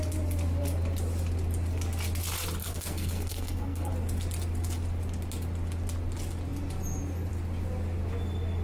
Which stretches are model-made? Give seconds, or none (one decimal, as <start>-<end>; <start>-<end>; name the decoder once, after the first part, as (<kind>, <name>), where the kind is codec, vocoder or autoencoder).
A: 2.6-3.9 (codec, SNAC)